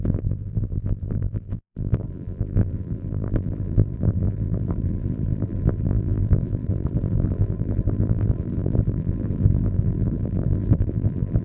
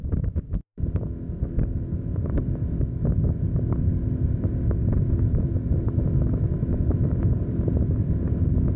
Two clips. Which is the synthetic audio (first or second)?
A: first